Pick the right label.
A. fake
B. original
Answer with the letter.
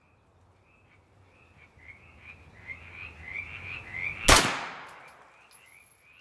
B